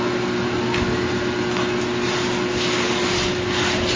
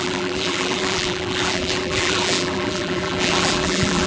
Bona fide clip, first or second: first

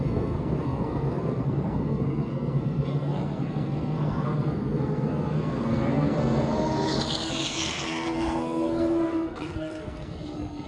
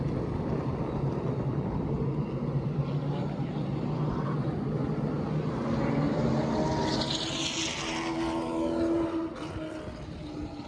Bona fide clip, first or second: second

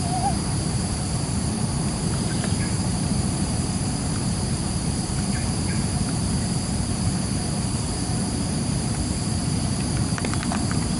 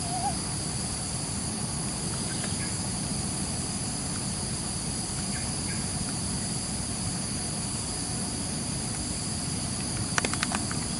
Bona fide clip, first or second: second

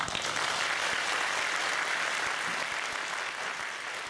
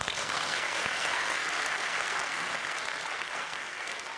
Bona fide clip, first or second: first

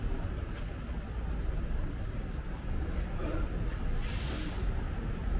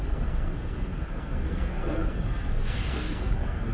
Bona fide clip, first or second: first